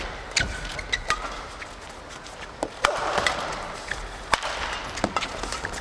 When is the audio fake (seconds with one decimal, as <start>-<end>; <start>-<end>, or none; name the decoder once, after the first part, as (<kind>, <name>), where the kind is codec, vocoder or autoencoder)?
none